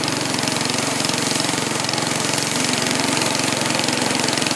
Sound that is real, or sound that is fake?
fake